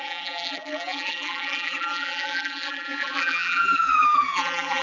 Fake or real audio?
fake